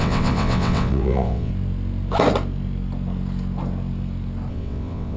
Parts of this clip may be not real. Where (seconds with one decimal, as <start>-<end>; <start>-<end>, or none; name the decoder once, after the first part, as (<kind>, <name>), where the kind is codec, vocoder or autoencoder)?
0.0-1.5 (vocoder, WaveNeXt); 4.5-5.2